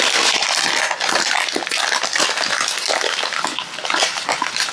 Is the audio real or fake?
real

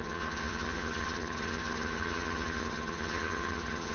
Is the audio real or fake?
fake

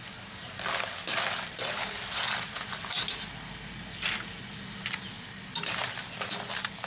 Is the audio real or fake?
real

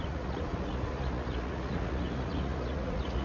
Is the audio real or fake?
fake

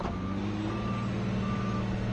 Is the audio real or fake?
real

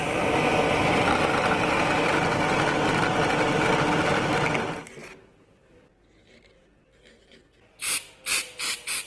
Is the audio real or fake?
real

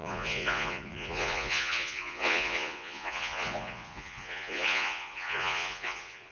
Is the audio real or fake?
fake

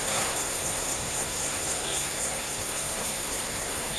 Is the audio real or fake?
fake